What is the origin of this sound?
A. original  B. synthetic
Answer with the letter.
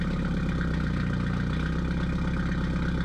A